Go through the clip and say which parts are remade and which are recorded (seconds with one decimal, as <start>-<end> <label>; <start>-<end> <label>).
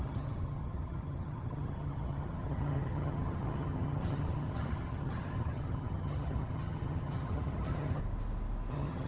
0.0-8.0 remade; 8.0-8.7 recorded; 8.7-9.1 remade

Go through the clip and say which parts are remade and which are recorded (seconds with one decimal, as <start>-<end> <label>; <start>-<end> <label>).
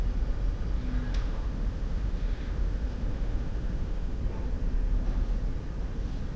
0.0-1.1 recorded; 1.1-4.2 remade; 4.2-6.4 recorded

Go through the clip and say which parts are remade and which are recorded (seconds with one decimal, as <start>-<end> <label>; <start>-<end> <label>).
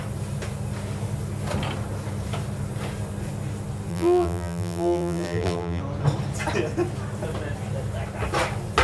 0.0-3.9 recorded; 3.9-5.8 remade; 5.8-8.8 recorded